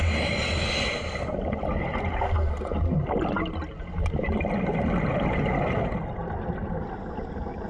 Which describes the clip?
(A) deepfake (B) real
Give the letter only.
B